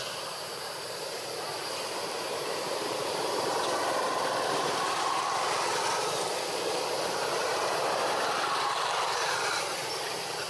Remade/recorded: remade